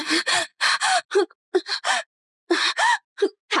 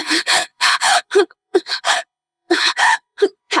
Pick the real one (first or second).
first